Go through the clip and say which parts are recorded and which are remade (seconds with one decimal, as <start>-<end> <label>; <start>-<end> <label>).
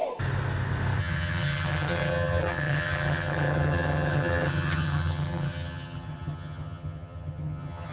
0.0-1.0 recorded; 1.0-7.9 remade